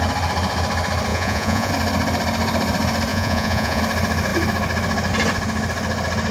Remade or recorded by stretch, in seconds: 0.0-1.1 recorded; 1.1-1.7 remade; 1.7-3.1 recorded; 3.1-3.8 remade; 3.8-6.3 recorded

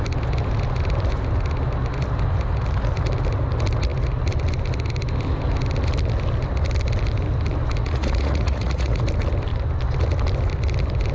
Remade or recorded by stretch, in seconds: 0.0-7.8 recorded; 7.8-9.0 remade; 9.0-11.1 recorded

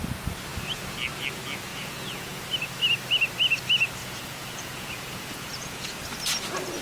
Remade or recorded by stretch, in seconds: 0.0-1.7 recorded; 1.7-2.4 remade; 2.4-4.0 recorded; 4.0-6.0 remade; 6.0-6.8 recorded

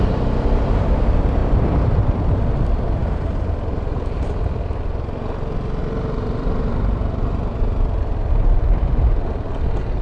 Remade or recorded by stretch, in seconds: 0.0-1.4 recorded; 1.4-2.0 remade; 2.0-3.0 recorded; 3.0-4.3 remade; 4.3-5.8 recorded; 5.8-9.3 remade; 9.3-10.0 recorded

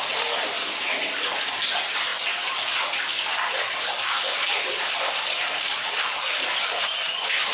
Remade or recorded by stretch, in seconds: 0.0-7.5 recorded